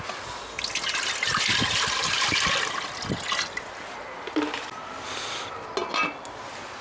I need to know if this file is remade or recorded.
recorded